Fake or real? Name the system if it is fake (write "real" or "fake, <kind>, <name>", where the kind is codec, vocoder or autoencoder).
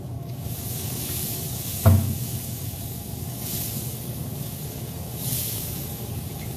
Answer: fake, codec, DAC